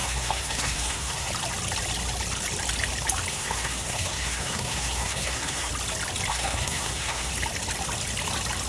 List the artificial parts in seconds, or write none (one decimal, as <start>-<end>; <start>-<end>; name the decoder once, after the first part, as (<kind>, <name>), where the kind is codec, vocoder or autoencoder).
0.0-1.3 (codec, SNAC); 3.3-5.7; 6.3-7.3